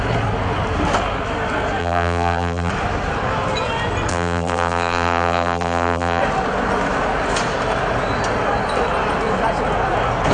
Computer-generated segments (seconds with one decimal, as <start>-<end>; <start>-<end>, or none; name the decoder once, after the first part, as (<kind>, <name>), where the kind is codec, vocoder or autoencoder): 1.8-2.7 (vocoder, BigVGAN v2); 4.1-6.2